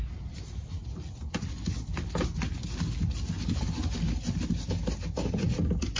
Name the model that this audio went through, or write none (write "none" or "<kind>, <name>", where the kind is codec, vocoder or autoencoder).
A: none